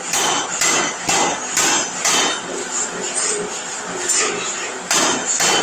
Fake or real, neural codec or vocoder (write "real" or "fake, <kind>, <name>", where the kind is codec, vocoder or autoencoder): real